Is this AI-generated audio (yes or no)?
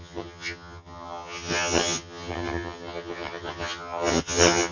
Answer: yes